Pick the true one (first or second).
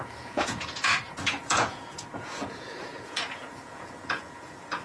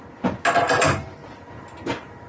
second